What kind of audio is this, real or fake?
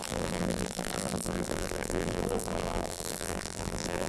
fake